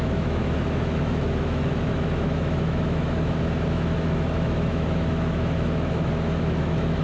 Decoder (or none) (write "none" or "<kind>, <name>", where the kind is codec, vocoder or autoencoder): autoencoder, DAC-VAE